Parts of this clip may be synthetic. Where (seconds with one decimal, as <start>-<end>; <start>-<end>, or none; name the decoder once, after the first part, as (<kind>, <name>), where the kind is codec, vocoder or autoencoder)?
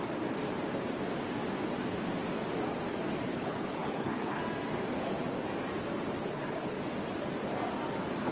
3.3-4.4 (codec, HILCodec); 6.2-6.8